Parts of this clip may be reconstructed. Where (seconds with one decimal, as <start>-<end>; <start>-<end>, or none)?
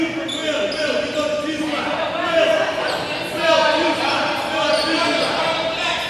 0.4-2.1; 3.6-6.1